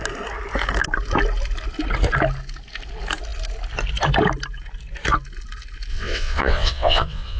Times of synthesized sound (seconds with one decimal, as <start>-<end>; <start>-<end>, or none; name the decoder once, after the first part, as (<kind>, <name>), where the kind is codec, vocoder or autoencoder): 5.9-7.4 (vocoder, WaveNeXt)